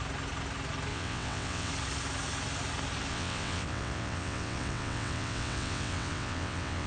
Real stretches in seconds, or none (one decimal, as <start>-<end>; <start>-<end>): 0.0-0.9; 1.7-3.1